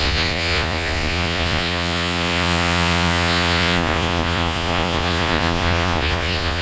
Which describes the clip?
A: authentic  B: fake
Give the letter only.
B